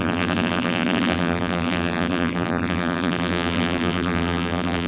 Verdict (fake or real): fake